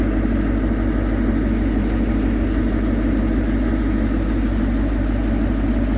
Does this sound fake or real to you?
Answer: real